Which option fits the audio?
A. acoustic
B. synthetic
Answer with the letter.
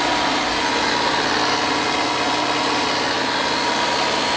A